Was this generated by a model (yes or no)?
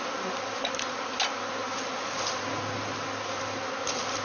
no